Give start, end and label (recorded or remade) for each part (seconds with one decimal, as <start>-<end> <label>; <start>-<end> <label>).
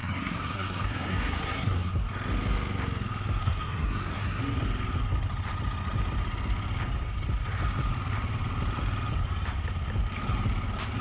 0.0-1.9 remade; 1.9-3.4 recorded; 3.4-4.4 remade; 4.4-11.0 recorded